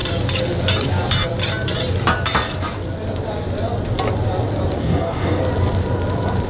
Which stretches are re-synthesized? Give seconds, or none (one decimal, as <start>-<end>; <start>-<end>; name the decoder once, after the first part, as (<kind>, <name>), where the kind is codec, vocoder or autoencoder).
4.8-5.4 (codec, DAC)